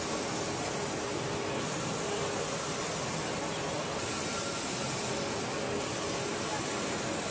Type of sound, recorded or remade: recorded